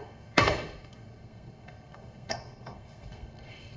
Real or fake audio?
fake